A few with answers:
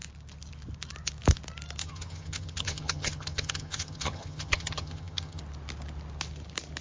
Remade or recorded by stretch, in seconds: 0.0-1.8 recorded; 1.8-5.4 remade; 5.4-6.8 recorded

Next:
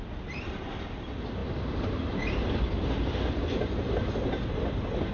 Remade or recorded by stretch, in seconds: 0.0-5.1 recorded

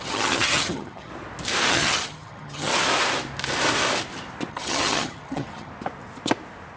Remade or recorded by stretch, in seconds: 0.0-1.1 remade; 1.1-1.7 recorded; 1.7-2.7 remade; 2.7-4.5 recorded; 4.5-5.7 remade; 5.7-6.8 recorded

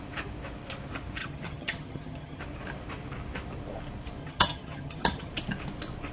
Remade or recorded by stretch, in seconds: 0.0-1.2 recorded; 1.2-2.4 remade; 2.4-4.2 recorded; 4.2-5.3 remade; 5.3-6.1 recorded

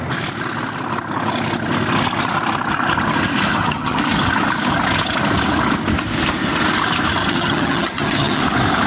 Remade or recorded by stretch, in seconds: 0.0-3.5 recorded; 3.5-4.0 remade; 4.0-7.2 recorded; 7.2-8.4 remade; 8.4-8.9 recorded

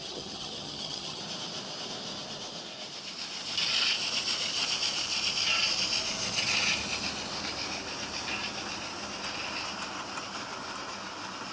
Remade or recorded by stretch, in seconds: 0.0-1.2 remade; 1.2-11.5 recorded

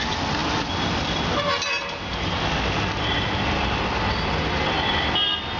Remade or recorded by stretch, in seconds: 0.0-5.6 recorded

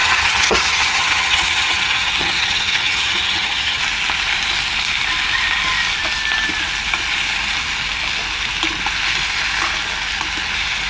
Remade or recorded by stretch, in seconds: 0.0-3.8 remade; 3.8-10.9 recorded